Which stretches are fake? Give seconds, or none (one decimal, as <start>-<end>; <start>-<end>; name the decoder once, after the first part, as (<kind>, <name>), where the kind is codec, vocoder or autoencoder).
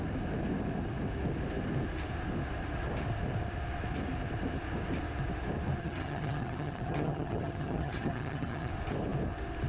5.8-8.7 (vocoder, HiFi-GAN)